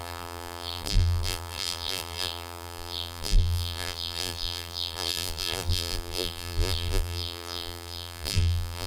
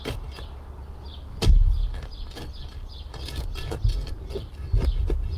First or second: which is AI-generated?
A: first